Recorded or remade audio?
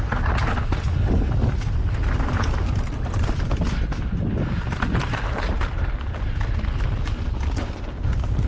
recorded